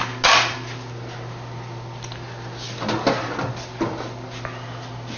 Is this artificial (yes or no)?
no